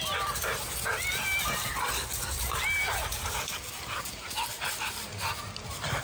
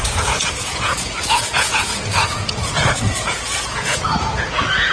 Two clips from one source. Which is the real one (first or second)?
first